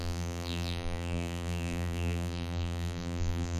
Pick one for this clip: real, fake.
fake